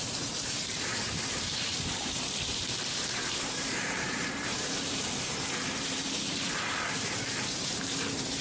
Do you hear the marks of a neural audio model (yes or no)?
yes